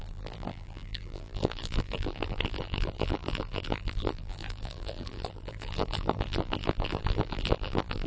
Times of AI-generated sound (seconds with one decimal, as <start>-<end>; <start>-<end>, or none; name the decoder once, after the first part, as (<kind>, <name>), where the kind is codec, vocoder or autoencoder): 0.0-8.1 (vocoder, BigVGAN v2)